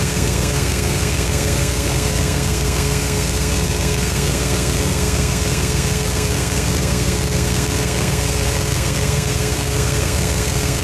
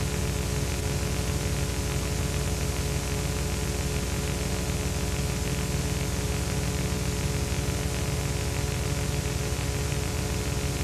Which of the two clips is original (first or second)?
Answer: second